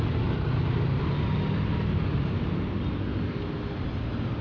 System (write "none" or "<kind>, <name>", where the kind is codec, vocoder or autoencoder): none